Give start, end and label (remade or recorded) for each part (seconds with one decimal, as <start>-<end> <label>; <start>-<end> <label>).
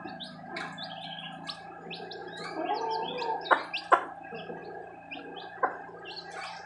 0.0-6.7 recorded